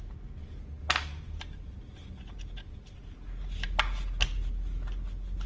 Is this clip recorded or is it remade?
recorded